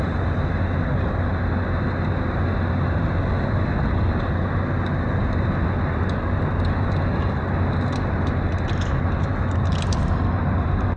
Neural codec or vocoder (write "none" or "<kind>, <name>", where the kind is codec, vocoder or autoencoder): none